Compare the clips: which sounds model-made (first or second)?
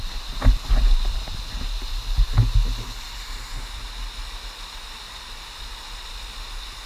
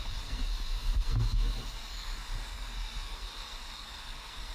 second